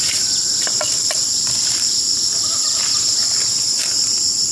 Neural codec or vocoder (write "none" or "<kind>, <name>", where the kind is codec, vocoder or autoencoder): vocoder, BigVGAN v2